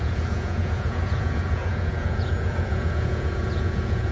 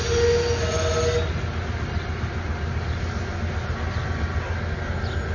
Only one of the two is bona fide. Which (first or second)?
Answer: second